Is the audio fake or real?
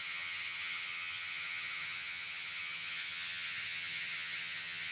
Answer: fake